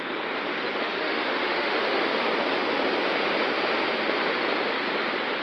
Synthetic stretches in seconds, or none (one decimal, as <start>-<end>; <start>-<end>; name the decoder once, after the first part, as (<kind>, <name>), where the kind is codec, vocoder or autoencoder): 0.8-2.0 (autoencoder, DAC-VAE)